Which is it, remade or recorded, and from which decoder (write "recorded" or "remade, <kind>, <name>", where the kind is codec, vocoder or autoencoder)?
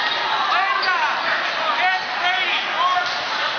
recorded